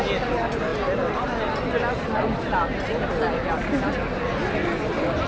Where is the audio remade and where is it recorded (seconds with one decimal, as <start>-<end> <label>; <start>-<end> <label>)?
0.0-5.3 recorded